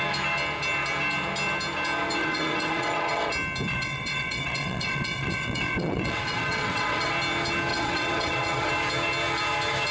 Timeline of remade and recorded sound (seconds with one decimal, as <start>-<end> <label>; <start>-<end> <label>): 0.0-2.2 recorded; 2.2-3.3 remade; 3.3-3.7 recorded; 3.7-7.1 remade; 7.1-7.7 recorded; 7.7-8.7 remade; 8.7-9.9 recorded